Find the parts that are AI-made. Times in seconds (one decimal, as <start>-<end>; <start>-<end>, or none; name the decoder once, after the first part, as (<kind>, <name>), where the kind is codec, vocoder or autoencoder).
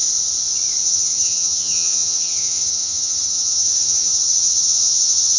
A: 0.8-5.4 (vocoder, HiFi-GAN)